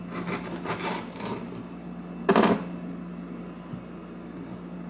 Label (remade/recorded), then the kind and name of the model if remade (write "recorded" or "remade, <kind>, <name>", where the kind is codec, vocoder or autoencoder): recorded